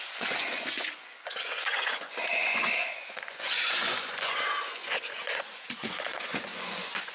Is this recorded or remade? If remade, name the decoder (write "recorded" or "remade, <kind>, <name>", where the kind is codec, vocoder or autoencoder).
remade, vocoder, Vocos